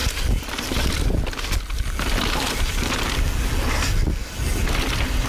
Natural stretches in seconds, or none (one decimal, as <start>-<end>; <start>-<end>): 0.0-5.3